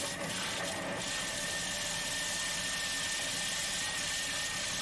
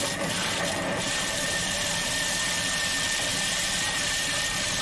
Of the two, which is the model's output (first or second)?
second